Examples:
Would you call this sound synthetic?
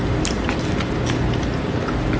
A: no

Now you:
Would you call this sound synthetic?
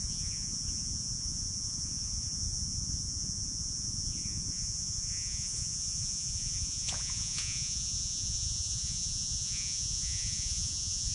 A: yes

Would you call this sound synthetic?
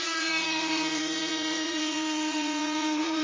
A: yes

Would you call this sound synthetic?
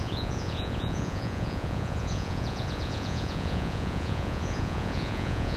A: yes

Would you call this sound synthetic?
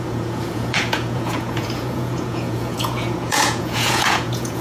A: yes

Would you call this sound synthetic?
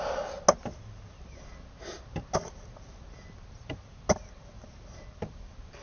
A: no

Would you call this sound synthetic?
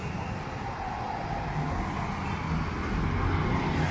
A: no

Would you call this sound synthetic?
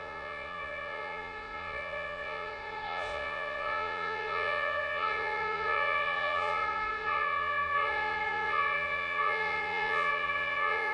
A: yes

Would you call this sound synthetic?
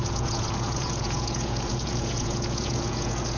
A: yes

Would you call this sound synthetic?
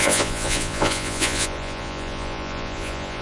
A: yes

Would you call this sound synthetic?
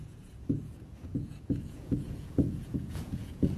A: yes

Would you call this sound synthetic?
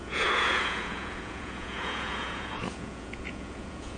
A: yes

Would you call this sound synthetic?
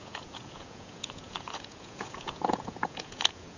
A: yes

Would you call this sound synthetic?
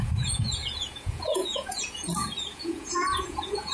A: yes